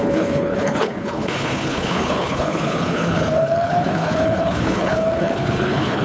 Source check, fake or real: fake